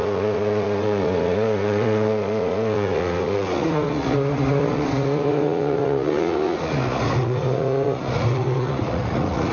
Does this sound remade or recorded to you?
remade